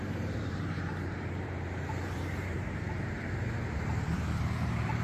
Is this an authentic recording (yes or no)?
no